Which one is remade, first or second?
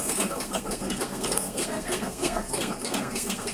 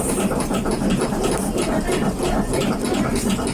first